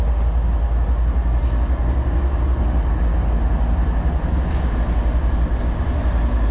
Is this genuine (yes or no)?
yes